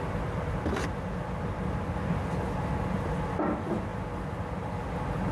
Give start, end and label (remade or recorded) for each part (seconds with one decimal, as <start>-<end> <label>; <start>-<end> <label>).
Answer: 0.0-5.3 recorded